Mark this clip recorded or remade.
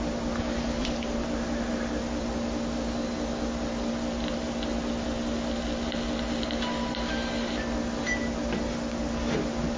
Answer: recorded